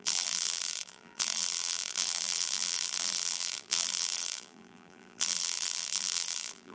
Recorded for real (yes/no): no